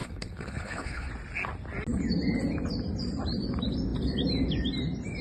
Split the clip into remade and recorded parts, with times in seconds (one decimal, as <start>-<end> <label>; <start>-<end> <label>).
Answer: 0.0-1.1 remade; 1.1-5.2 recorded